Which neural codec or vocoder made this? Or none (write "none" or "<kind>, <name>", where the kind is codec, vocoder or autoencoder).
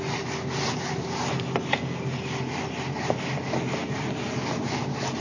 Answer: none